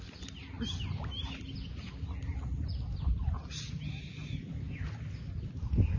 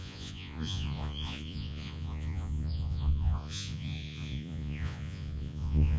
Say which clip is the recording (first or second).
first